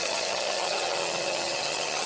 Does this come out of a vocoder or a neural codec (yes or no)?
yes